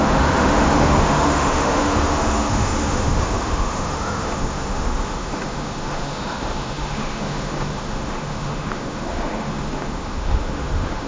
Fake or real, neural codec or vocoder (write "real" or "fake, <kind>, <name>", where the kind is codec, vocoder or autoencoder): fake, autoencoder, DAC-VAE